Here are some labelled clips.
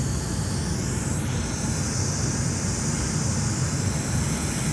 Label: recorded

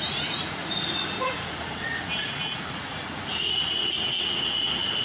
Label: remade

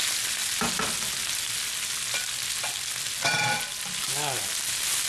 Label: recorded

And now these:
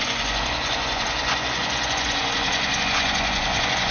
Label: remade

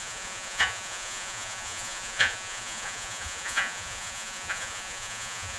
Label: remade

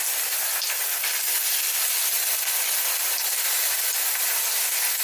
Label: recorded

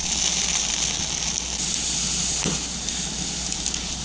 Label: recorded